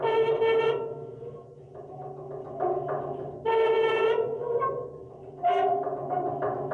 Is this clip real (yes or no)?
yes